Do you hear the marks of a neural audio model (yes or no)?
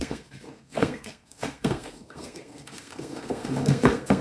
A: yes